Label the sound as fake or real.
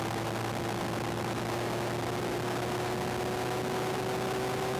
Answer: real